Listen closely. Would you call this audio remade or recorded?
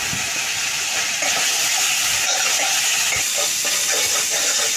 recorded